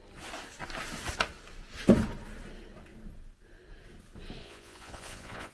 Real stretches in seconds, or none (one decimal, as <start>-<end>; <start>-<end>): 0.0-4.4